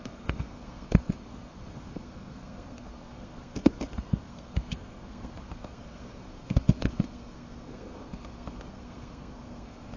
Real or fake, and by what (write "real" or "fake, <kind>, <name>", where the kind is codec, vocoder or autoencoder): fake, codec, SNAC